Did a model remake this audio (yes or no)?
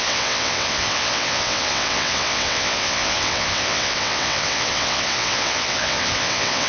yes